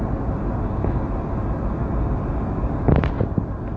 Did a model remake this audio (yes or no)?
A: no